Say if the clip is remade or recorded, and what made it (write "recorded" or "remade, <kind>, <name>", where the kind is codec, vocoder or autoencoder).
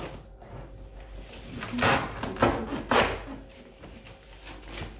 recorded